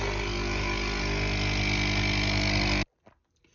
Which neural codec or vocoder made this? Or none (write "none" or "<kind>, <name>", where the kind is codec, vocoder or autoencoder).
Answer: none